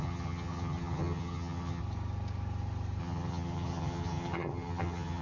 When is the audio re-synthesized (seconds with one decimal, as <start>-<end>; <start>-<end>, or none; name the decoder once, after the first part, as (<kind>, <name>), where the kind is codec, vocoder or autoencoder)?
0.0-1.8 (vocoder, HiFi-GAN); 3.0-5.2